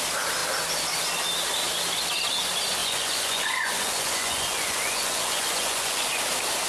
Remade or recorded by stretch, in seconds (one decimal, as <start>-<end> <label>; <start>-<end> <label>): 0.0-2.8 recorded; 2.8-6.2 remade; 6.2-6.7 recorded

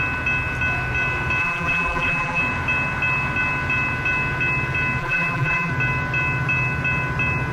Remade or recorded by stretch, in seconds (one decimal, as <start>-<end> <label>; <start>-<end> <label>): 0.0-1.4 recorded; 1.4-2.4 remade; 2.4-5.0 recorded; 5.0-5.7 remade; 5.7-7.5 recorded

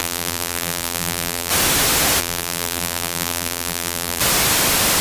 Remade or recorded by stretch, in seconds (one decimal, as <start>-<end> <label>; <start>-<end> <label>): 0.0-1.5 remade; 1.5-2.2 recorded; 2.2-4.2 remade; 4.2-5.0 recorded

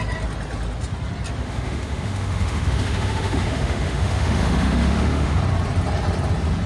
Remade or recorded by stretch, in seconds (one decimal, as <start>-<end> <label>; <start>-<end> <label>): 0.0-1.4 recorded; 1.4-5.4 remade; 5.4-6.7 recorded

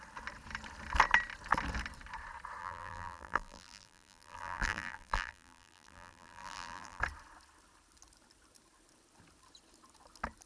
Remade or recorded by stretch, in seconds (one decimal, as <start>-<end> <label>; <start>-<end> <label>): 0.0-2.6 recorded; 2.6-7.0 remade; 7.0-10.5 recorded

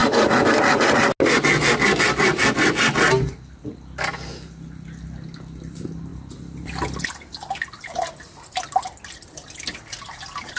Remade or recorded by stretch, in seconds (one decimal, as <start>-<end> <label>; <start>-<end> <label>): 0.0-10.6 recorded

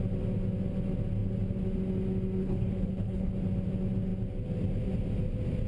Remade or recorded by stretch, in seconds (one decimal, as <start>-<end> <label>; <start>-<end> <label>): 0.0-2.4 recorded; 2.4-3.3 remade; 3.3-5.7 recorded

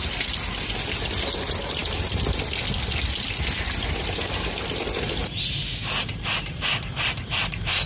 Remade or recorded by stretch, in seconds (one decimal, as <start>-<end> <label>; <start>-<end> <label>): 0.0-5.2 recorded; 5.2-7.9 remade